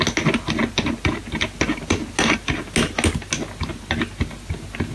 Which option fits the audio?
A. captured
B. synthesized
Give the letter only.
A